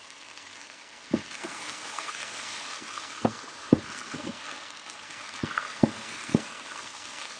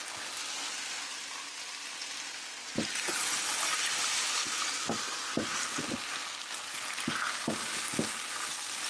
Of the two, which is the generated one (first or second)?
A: first